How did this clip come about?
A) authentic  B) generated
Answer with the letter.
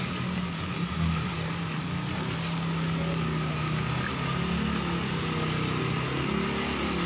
A